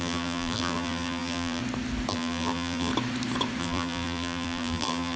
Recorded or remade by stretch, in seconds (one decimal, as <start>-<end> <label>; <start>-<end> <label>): 0.0-1.6 remade; 1.6-2.1 recorded; 2.1-2.9 remade; 2.9-3.6 recorded; 3.6-5.2 remade